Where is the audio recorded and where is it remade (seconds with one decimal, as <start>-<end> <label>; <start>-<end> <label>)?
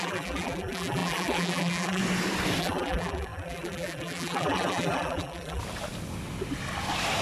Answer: 0.0-2.0 remade; 2.0-2.6 recorded; 2.6-5.6 remade; 5.6-7.2 recorded